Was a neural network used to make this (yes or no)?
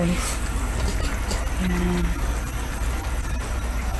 no